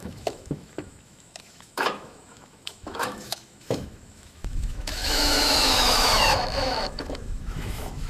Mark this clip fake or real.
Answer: fake